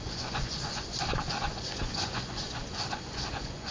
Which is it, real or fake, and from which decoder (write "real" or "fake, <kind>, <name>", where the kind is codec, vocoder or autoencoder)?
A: fake, vocoder, Vocos